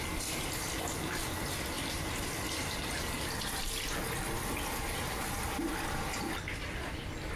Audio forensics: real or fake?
real